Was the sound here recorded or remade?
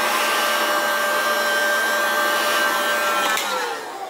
recorded